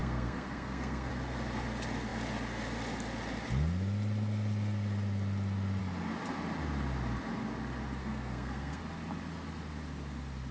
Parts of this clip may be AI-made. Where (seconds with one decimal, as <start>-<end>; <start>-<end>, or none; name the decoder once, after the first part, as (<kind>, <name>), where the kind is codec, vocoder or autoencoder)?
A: 0.0-1.1 (codec, SNAC); 8.0-8.8

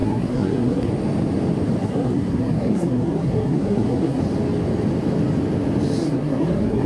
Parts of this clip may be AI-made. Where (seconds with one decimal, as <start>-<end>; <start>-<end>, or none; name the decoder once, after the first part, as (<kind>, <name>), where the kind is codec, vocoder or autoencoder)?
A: 0.0-0.9 (codec, SNAC); 1.8-4.2; 6.0-6.9

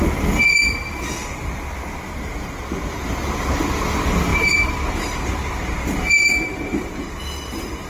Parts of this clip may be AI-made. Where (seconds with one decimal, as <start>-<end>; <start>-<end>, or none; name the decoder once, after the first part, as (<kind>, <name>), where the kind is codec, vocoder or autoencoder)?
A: 1.2-2.6 (vocoder, BigVGAN v2); 4.3-7.2

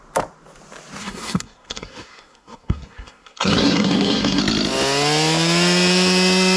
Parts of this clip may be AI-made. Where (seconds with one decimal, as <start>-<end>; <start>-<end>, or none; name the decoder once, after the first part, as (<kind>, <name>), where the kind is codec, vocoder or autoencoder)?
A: 1.0-4.4 (codec, SNAC)

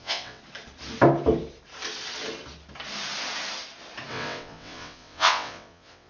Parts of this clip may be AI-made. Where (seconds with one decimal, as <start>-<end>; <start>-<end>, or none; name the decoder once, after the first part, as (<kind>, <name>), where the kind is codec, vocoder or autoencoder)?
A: 0.0-0.4 (vocoder, WaveNeXt); 4.1-6.1

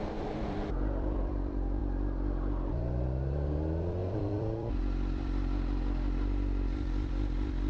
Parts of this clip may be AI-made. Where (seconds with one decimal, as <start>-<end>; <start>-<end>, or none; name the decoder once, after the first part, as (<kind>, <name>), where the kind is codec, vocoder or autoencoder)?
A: 0.0-1.8 (vocoder, BigVGAN v2); 2.7-7.7

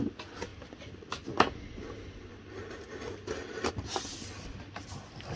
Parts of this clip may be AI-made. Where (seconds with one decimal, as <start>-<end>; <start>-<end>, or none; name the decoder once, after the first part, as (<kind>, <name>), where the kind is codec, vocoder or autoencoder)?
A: none